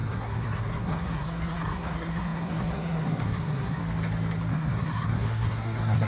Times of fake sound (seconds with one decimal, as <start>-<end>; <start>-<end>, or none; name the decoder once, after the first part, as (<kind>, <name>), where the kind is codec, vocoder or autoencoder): 0.0-3.8 (codec, SNAC); 4.5-6.1